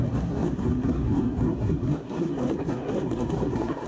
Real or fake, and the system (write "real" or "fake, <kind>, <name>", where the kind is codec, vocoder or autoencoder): fake, codec, SNAC